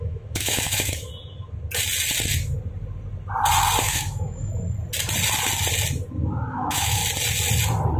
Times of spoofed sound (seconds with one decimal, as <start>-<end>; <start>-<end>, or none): 0.0-1.1; 3.8-4.5; 6.5-7.0